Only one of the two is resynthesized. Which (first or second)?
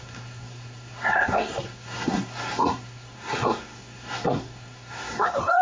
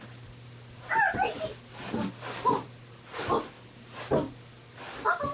first